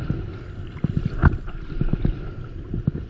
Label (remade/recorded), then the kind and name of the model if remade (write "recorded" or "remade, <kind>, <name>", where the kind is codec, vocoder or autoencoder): recorded